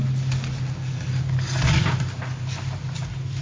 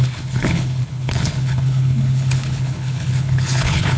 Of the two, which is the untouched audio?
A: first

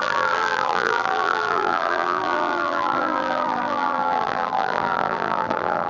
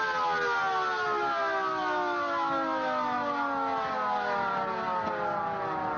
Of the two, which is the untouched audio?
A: second